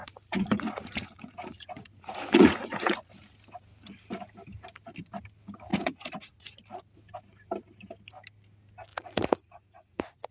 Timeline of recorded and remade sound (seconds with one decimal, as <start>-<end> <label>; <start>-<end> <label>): 0.0-3.1 remade; 3.1-5.7 recorded; 5.7-6.6 remade; 6.6-8.9 recorded; 8.9-10.3 remade